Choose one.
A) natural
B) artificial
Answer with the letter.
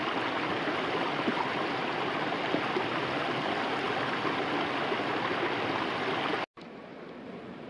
A